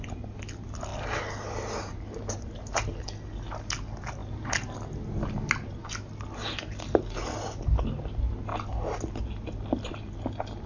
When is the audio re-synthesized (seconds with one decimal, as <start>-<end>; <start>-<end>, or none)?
none